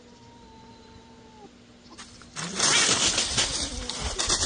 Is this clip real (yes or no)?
yes